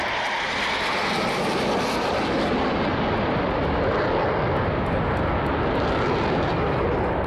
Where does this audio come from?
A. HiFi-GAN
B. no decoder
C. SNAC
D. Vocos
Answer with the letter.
B